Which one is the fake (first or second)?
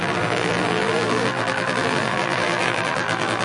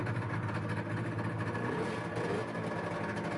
first